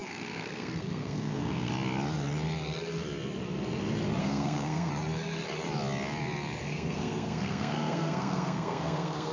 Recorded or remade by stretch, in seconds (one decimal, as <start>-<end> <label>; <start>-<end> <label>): 0.0-1.7 remade; 1.7-4.2 recorded; 4.2-4.9 remade; 4.9-6.6 recorded; 6.6-9.3 remade